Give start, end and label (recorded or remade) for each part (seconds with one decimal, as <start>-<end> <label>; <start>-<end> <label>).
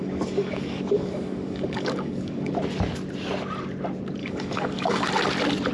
0.0-2.5 remade; 2.5-4.2 recorded; 4.2-5.1 remade; 5.1-5.7 recorded